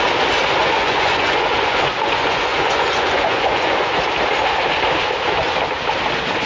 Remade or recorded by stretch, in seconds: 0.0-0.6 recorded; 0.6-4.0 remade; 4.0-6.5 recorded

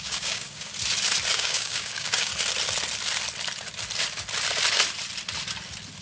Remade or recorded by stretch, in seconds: 0.0-0.7 remade; 0.7-1.3 recorded; 1.3-2.3 remade; 2.3-6.0 recorded

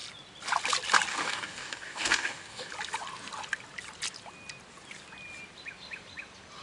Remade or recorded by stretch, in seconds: 0.0-1.1 recorded; 1.1-2.7 remade; 2.7-6.6 recorded

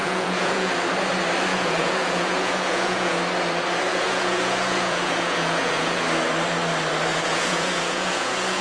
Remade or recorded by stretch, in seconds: 0.0-0.7 remade; 0.7-1.5 recorded; 1.5-3.2 remade; 3.2-3.9 recorded; 3.9-6.0 remade; 6.0-7.1 recorded; 7.1-8.6 remade

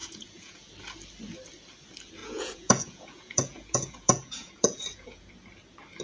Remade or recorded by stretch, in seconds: 0.0-0.7 remade; 0.7-2.2 recorded; 2.2-5.3 remade; 5.3-6.0 recorded

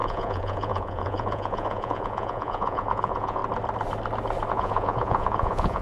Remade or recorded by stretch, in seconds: 0.0-3.4 remade; 3.4-4.5 recorded; 4.5-5.8 remade

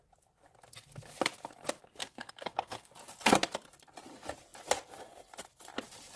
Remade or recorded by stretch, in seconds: 0.0-2.0 recorded; 2.0-2.9 remade; 2.9-6.2 recorded

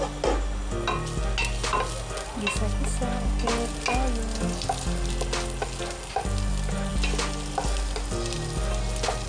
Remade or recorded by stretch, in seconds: 0.0-9.3 recorded